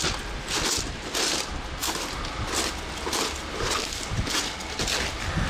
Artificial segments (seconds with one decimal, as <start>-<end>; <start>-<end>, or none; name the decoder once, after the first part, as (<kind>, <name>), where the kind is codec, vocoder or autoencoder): none